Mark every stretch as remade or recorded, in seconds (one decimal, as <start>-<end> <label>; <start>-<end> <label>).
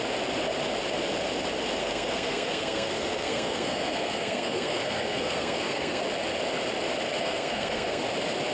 0.0-1.8 recorded; 1.8-6.0 remade; 6.0-7.2 recorded; 7.2-8.0 remade; 8.0-8.5 recorded